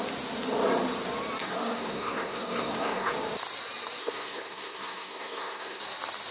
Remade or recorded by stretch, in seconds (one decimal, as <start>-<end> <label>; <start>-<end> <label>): 0.0-1.4 recorded; 1.4-3.1 remade; 3.1-4.0 recorded; 4.0-5.8 remade; 5.8-6.3 recorded